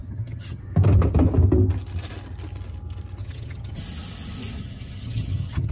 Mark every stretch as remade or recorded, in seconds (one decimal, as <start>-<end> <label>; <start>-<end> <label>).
0.0-0.6 remade; 0.6-3.2 recorded; 3.2-3.8 remade; 3.8-4.6 recorded; 4.6-5.7 remade